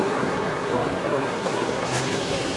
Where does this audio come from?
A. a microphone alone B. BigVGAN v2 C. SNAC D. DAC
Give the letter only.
C